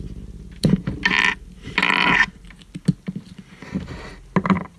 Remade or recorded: recorded